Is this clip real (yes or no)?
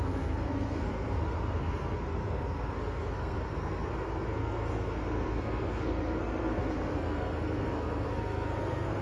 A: no